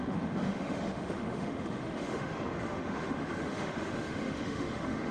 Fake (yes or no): yes